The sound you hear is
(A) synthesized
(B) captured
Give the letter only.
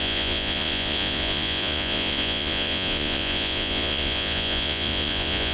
A